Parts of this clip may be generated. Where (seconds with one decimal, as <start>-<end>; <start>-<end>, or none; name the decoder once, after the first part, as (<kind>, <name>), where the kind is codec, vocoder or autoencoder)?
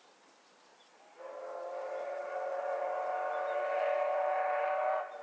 none